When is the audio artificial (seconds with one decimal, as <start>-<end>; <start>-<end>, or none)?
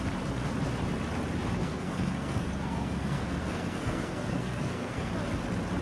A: 1.6-5.1